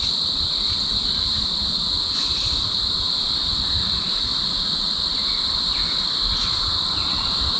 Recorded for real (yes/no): yes